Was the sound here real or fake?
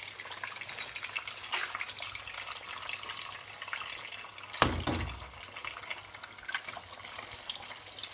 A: real